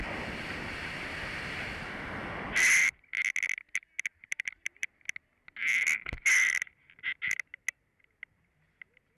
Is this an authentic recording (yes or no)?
yes